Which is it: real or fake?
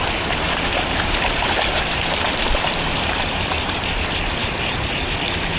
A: fake